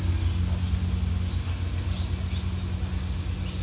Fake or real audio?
real